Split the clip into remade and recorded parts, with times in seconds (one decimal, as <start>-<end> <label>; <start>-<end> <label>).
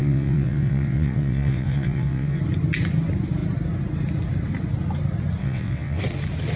0.0-2.4 remade; 2.4-5.4 recorded; 5.4-6.0 remade; 6.0-6.5 recorded